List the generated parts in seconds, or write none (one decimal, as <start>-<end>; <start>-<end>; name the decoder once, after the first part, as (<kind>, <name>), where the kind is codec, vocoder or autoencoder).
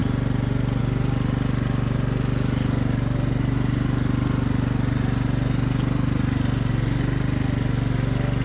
none